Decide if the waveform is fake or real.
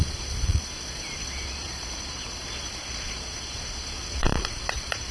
fake